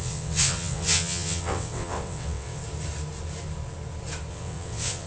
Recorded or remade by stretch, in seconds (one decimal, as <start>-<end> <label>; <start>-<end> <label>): 0.0-2.6 remade; 2.6-4.3 recorded; 4.3-5.1 remade